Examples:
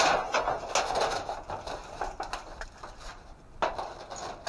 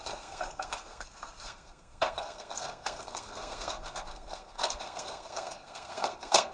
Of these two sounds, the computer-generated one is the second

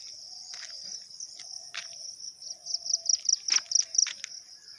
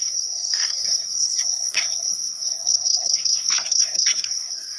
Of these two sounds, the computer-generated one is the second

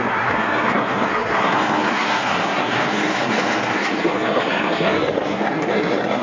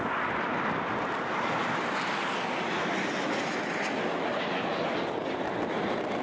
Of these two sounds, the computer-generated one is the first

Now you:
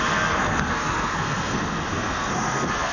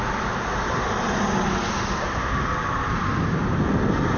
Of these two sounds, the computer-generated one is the first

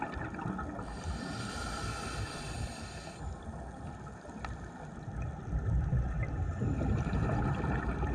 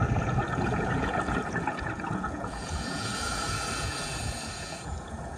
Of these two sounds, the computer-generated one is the second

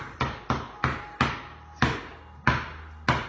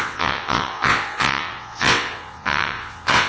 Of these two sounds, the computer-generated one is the second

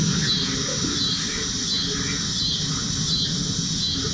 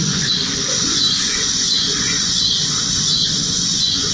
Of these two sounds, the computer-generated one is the second